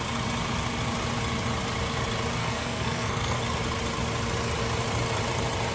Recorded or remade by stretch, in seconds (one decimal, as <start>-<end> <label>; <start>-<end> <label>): 0.0-2.4 recorded; 2.4-3.4 remade; 3.4-5.7 recorded